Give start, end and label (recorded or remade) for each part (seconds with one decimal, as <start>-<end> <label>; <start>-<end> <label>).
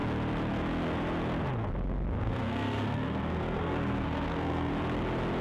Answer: 0.0-2.2 recorded; 2.2-4.7 remade; 4.7-5.4 recorded